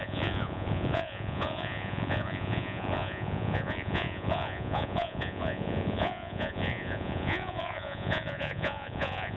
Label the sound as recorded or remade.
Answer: remade